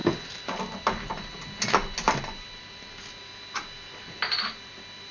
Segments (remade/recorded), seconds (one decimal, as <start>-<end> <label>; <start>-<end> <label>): 0.0-5.1 recorded